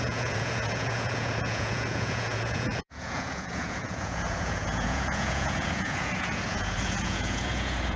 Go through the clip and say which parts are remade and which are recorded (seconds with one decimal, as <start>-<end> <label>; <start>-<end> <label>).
0.0-8.0 remade